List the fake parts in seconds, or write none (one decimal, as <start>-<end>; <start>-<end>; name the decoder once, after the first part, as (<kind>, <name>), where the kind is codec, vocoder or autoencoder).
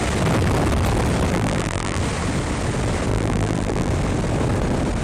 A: 1.3-2.0 (vocoder, BigVGAN v2); 3.1-3.9